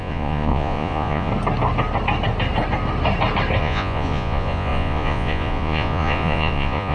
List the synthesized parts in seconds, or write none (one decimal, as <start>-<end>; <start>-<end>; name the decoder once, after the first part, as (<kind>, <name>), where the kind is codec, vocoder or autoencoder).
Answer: 0.0-1.3 (vocoder, Vocos); 3.6-6.9